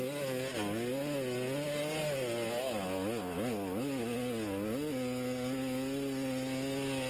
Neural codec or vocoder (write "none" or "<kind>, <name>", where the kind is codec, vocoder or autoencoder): none